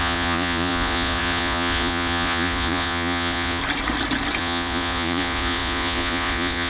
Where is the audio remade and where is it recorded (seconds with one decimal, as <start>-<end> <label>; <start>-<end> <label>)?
0.0-3.6 remade; 3.6-4.4 recorded; 4.4-6.7 remade